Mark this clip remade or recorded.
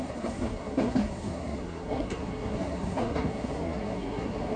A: remade